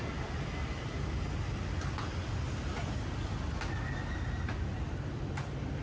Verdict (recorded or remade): recorded